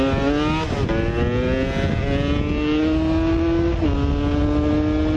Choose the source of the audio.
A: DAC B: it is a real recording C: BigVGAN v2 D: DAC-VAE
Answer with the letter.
B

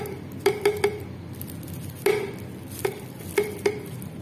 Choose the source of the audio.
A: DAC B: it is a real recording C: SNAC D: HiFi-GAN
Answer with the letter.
B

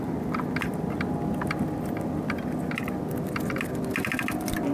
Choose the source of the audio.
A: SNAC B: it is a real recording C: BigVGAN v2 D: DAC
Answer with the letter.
B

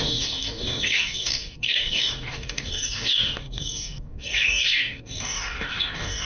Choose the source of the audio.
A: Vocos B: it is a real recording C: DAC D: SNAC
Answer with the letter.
C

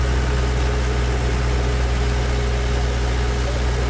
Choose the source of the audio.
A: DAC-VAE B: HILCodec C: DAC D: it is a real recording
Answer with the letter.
D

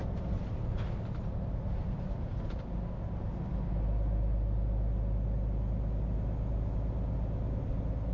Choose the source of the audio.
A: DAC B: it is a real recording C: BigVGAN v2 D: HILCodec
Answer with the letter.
B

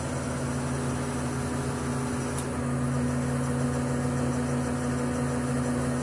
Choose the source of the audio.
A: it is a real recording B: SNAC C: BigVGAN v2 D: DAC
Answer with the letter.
A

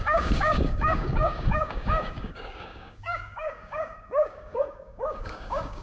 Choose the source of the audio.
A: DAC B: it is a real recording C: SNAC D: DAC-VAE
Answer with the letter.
A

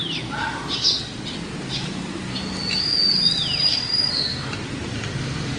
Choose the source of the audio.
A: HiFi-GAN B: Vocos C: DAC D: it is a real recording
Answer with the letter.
D